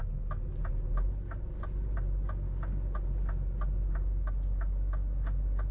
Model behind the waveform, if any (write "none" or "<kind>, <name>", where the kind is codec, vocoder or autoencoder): none